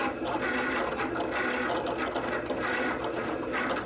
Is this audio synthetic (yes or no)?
no